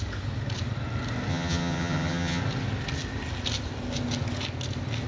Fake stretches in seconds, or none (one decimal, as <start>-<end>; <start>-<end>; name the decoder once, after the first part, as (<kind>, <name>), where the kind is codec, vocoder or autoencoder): 1.3-2.4 (vocoder, HiFi-GAN)